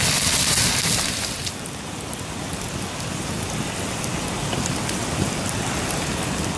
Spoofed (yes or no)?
no